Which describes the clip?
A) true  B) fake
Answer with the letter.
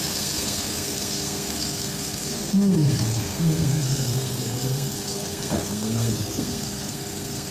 B